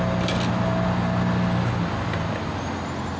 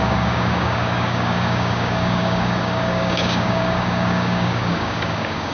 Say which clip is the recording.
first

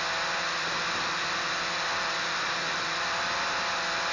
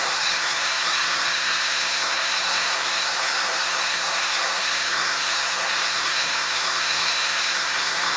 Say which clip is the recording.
first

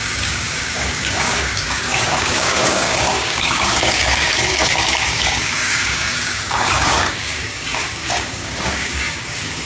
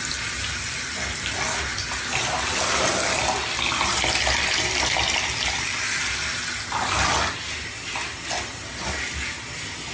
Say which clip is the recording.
second